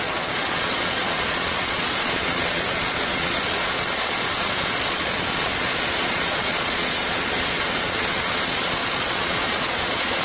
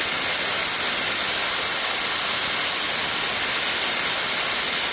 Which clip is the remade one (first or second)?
first